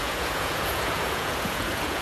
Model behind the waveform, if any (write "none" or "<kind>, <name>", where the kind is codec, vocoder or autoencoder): vocoder, Vocos